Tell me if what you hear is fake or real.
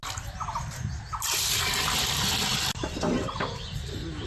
real